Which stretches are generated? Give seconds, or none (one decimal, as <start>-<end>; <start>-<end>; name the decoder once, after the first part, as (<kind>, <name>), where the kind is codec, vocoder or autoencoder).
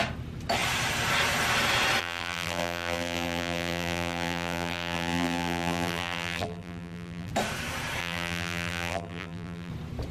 2.0-7.3 (vocoder, BigVGAN v2); 8.0-9.7